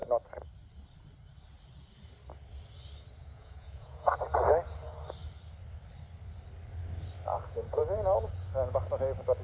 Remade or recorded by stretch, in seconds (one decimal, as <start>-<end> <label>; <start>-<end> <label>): 0.0-3.2 recorded; 3.2-4.2 remade; 4.2-7.3 recorded; 7.3-8.3 remade; 8.3-9.4 recorded